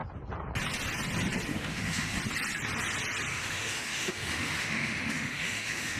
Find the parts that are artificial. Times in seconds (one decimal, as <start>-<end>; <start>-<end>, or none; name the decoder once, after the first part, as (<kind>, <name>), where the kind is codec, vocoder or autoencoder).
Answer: 1.5-2.2 (autoencoder, DAC-VAE); 3.3-6.0